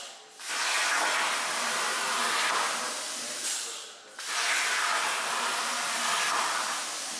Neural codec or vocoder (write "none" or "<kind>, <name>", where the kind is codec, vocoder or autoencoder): none